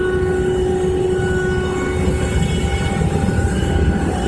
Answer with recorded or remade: recorded